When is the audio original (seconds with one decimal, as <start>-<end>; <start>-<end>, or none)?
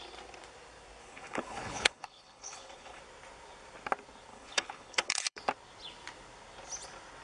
0.0-1.0; 3.0-4.3; 5.4-7.2